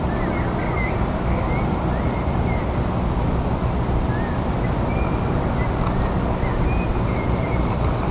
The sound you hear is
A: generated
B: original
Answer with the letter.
B